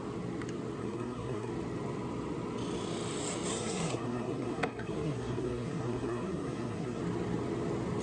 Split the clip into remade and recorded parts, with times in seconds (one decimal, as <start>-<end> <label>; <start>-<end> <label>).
0.0-0.8 recorded; 0.8-1.5 remade; 1.5-3.5 recorded; 3.5-7.0 remade; 7.0-8.0 recorded